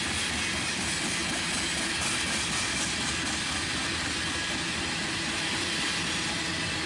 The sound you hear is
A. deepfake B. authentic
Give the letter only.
B